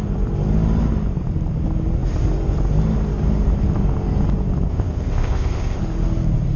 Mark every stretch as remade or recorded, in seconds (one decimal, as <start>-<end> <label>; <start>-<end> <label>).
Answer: 0.0-4.7 recorded; 4.7-5.8 remade; 5.8-6.6 recorded